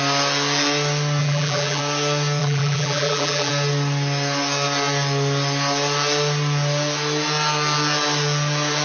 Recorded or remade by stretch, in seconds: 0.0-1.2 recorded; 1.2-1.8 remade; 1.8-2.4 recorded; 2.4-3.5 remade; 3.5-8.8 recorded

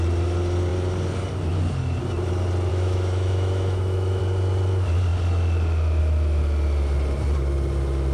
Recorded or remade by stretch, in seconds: 0.0-2.7 recorded; 2.7-4.2 remade; 4.2-8.1 recorded

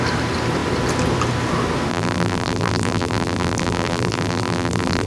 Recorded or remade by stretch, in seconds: 0.0-1.9 recorded; 1.9-5.1 remade

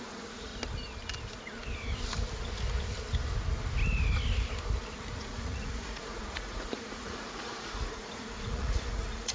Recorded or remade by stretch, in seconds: 0.0-0.5 remade; 0.5-5.2 recorded; 5.2-9.3 remade

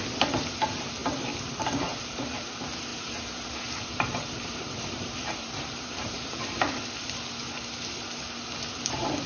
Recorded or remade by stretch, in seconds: 0.0-2.9 recorded; 2.9-6.4 remade; 6.4-9.3 recorded

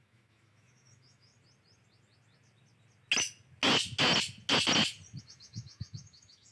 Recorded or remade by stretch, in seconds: 0.0-1.3 remade; 1.3-5.2 recorded; 5.2-6.5 remade

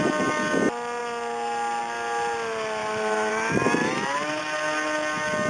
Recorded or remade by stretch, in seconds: 0.0-2.8 recorded; 2.8-4.4 remade; 4.4-5.5 recorded